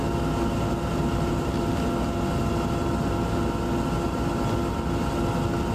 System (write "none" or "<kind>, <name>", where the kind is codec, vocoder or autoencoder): none